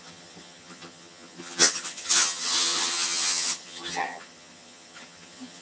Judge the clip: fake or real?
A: fake